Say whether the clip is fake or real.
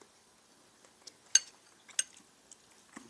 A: real